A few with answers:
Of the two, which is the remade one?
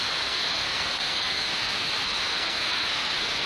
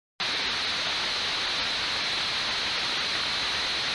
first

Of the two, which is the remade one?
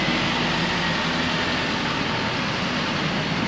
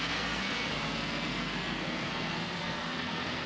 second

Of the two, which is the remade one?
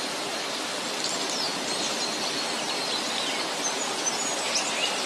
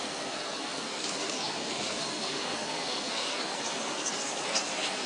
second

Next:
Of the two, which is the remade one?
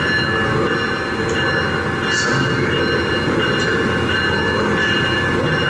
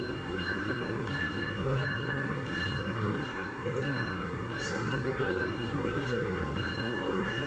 second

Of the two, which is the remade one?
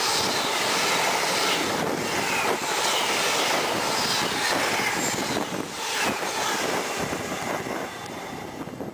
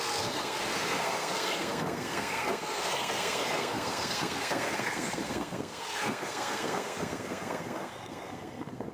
second